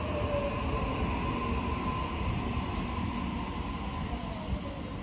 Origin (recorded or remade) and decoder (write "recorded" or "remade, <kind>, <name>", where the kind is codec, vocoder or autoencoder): recorded